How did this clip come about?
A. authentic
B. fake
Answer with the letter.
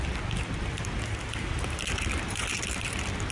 A